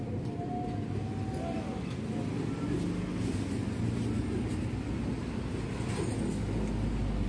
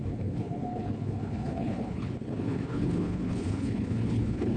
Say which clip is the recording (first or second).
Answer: first